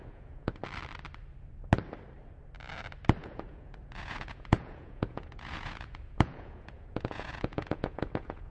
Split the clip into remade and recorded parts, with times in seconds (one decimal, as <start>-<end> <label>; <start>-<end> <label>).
0.0-0.6 remade; 0.6-3.2 recorded; 3.2-8.5 remade